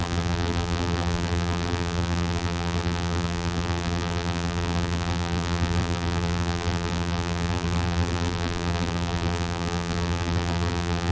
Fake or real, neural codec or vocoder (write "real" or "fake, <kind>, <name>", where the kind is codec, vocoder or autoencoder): fake, vocoder, BigVGAN v2